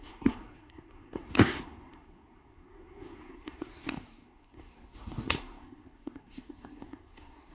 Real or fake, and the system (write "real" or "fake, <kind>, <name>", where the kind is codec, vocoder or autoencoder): fake, codec, SNAC